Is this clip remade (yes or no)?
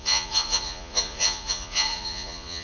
yes